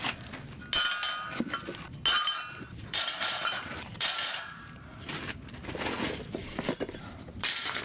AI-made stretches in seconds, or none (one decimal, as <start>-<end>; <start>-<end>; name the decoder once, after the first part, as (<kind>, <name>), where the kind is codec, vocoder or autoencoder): 2.2-5.2 (vocoder, BigVGAN v2); 6.4-7.8